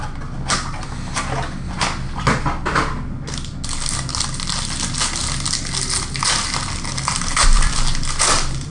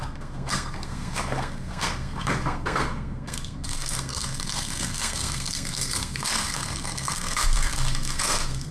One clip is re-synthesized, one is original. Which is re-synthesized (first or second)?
second